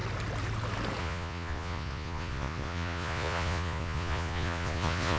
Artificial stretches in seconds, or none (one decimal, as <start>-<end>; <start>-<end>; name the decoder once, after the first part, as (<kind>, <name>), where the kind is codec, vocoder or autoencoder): 1.0-5.2 (vocoder, Vocos)